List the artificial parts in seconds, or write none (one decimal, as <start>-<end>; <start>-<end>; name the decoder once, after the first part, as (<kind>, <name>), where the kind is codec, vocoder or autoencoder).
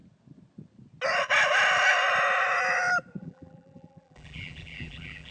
3.2-5.3 (vocoder, BigVGAN v2)